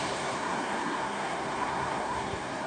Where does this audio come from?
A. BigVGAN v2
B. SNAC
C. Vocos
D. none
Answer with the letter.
B